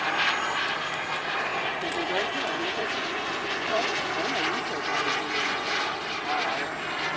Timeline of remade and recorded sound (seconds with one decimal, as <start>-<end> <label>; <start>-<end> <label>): 0.0-1.5 recorded; 1.5-4.1 remade; 4.1-4.9 recorded; 4.9-5.8 remade; 5.8-7.2 recorded